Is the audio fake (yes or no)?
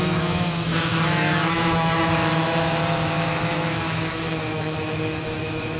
yes